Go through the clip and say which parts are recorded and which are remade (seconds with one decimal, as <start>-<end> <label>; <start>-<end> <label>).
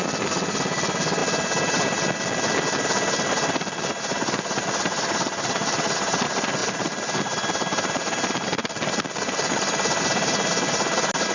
0.0-11.3 recorded